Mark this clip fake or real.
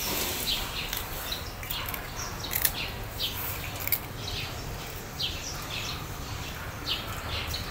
real